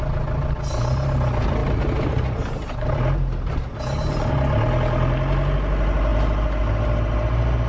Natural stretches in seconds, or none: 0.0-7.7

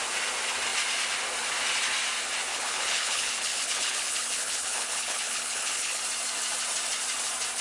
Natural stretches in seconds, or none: 0.0-2.5; 6.0-7.6

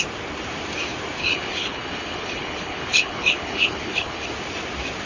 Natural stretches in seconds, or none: 0.0-1.2; 4.3-5.1

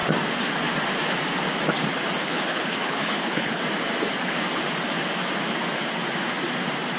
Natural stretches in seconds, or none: 0.0-2.2; 3.6-7.0

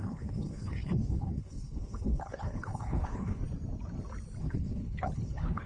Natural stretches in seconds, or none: 3.4-4.4

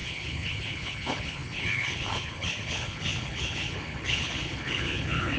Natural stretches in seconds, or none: none